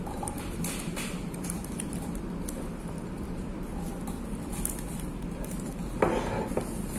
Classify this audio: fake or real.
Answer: real